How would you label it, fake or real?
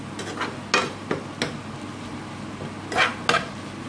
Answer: real